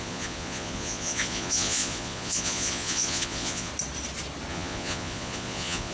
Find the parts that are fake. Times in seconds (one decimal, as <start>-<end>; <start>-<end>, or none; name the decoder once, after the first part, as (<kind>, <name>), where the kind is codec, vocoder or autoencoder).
0.0-3.7 (vocoder, Vocos); 4.5-5.9